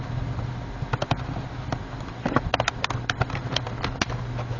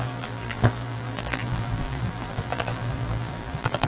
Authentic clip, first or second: first